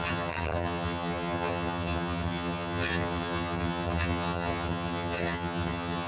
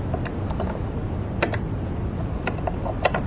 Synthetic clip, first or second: first